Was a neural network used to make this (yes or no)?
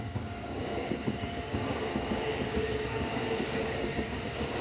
yes